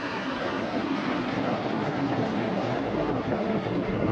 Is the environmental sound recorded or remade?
remade